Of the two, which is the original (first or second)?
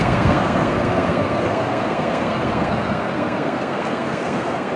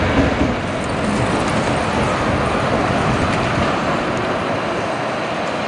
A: second